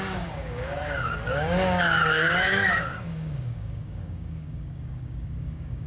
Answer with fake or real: fake